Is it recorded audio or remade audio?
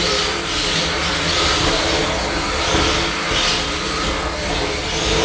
recorded